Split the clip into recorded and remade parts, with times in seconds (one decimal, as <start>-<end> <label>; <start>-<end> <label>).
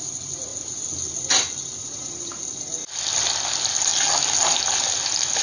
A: 0.0-1.8 recorded; 1.8-2.4 remade; 2.4-5.4 recorded